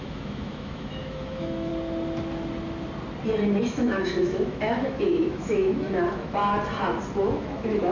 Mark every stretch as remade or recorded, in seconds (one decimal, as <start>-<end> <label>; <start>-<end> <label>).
0.0-1.7 remade; 1.7-3.6 recorded; 3.6-6.4 remade; 6.4-7.2 recorded; 7.2-7.9 remade